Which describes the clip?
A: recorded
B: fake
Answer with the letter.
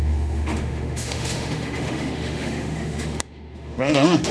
B